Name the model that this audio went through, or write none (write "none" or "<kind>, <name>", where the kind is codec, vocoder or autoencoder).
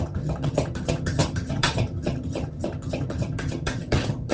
vocoder, HiFi-GAN